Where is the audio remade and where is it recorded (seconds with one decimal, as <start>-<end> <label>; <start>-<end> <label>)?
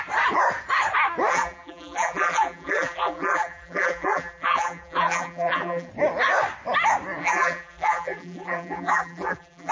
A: 0.0-1.3 recorded; 1.3-5.9 remade; 5.9-7.2 recorded; 7.2-9.7 remade